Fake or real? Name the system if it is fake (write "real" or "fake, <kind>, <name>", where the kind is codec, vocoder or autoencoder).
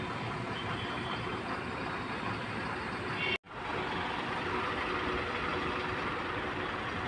real